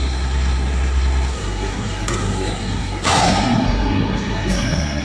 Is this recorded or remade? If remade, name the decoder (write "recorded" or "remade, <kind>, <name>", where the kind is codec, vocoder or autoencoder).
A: remade, codec, SNAC